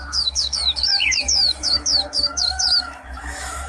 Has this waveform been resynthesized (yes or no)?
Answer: yes